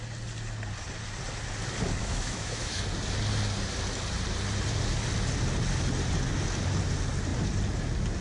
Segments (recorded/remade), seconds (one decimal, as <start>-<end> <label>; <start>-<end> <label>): 0.0-2.0 recorded; 2.0-2.8 remade; 2.8-8.2 recorded